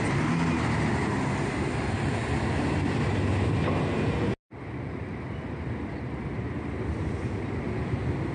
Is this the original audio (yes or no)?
yes